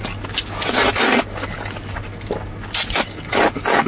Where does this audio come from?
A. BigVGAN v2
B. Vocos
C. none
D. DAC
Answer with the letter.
C